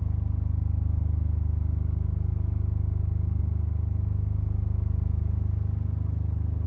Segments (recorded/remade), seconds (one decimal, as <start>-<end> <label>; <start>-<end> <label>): 0.0-6.7 recorded